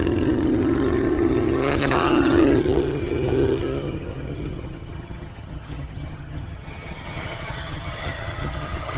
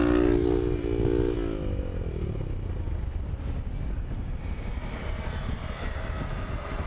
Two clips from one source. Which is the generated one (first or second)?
first